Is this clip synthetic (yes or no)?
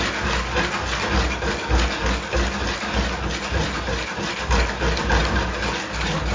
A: no